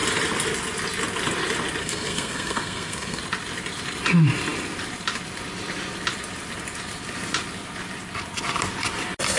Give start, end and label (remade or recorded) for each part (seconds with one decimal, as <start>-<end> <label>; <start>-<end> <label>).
0.0-1.8 recorded; 1.8-3.2 remade; 3.2-9.4 recorded